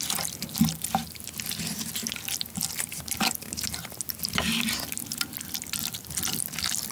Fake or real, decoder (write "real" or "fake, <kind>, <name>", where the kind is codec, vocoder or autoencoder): real